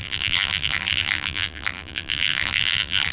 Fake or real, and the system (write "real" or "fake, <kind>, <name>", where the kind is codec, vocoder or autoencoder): fake, vocoder, BigVGAN v2